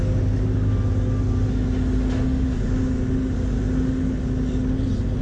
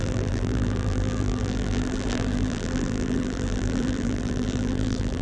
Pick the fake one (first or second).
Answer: second